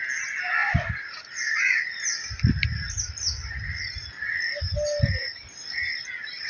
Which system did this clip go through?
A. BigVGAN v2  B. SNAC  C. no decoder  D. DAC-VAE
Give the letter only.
C